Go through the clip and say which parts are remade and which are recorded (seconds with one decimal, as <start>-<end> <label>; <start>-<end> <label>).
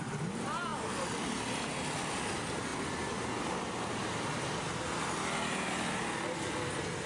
0.0-0.7 recorded; 0.7-1.3 remade; 1.3-4.0 recorded; 4.0-5.8 remade; 5.8-7.1 recorded